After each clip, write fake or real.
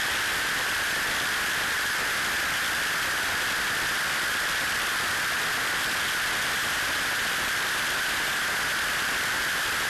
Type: real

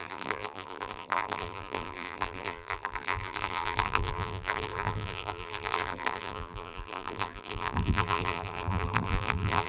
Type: fake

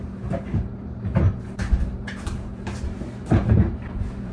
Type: fake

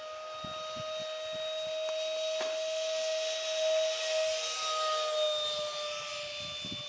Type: real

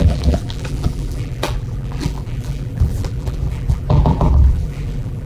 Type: fake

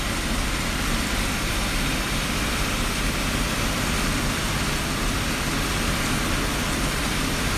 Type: fake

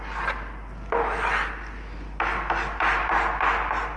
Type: real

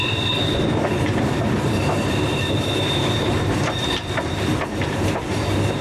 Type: fake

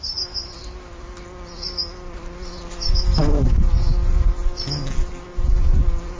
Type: real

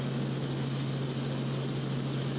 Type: real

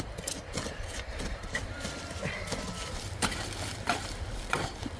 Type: fake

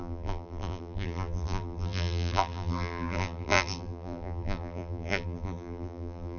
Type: fake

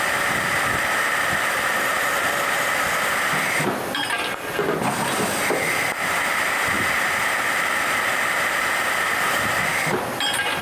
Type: real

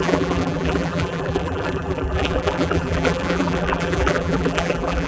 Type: fake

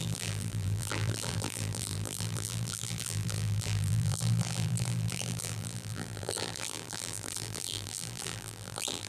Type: fake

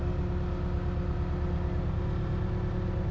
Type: real